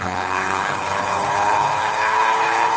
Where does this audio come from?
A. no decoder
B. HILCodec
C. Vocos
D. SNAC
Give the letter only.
B